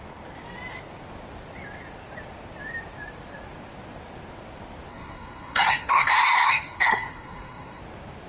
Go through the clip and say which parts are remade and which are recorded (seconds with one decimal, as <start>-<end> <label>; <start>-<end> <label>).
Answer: 0.0-4.9 recorded; 4.9-7.8 remade; 7.8-8.3 recorded